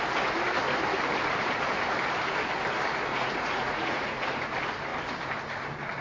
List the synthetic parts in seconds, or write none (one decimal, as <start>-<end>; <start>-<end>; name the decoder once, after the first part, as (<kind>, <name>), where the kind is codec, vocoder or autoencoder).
3.1-4.2 (vocoder, Vocos)